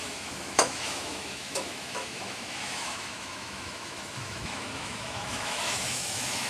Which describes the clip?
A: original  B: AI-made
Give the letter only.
B